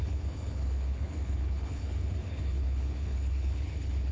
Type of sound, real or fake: fake